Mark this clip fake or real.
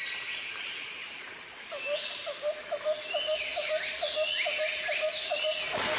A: real